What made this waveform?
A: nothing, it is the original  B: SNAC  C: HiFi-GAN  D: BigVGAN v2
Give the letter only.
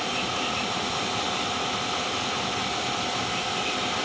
A